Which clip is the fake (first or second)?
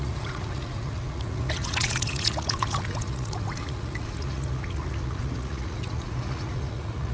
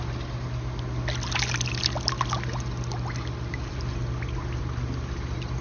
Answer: first